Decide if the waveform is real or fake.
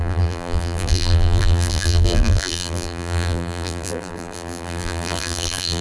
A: fake